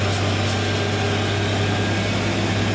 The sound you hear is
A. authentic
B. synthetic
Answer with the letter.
A